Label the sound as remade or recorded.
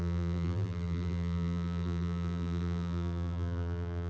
remade